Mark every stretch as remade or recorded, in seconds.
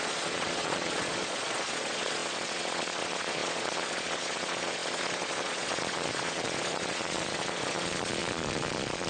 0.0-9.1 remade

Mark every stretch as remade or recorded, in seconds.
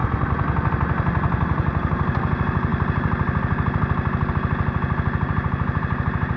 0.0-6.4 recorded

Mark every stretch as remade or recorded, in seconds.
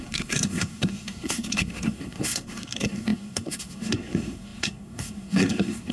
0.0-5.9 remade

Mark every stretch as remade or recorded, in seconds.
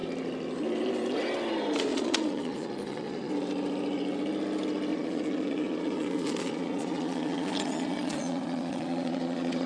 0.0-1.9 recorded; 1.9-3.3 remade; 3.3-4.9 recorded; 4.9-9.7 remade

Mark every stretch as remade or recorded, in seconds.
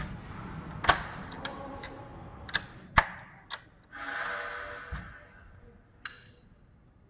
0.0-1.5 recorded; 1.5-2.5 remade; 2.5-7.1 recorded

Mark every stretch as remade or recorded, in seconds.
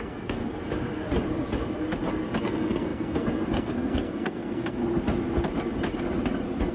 0.0-0.4 remade; 0.4-2.4 recorded; 2.4-4.8 remade; 4.8-6.7 recorded